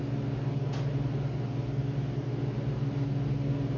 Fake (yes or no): no